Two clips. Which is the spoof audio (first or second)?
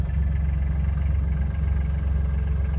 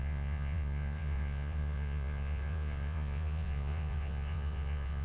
second